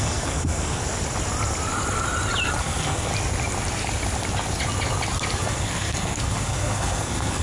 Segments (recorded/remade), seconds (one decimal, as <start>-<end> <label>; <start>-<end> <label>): 0.0-0.8 remade; 0.8-2.6 recorded; 2.6-3.1 remade; 3.1-5.4 recorded; 5.4-7.4 remade